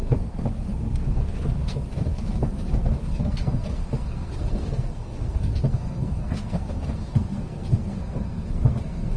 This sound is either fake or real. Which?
fake